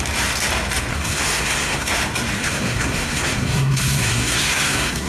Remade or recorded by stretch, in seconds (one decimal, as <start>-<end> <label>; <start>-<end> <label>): 0.0-0.9 recorded; 0.9-1.9 remade; 1.9-2.4 recorded; 2.4-5.1 remade